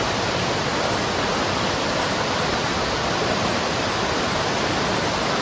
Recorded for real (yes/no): yes